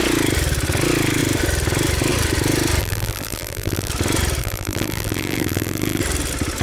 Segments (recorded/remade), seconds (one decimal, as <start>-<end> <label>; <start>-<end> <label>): 0.0-2.8 recorded; 2.8-3.9 remade; 3.9-4.4 recorded; 4.4-6.0 remade; 6.0-6.6 recorded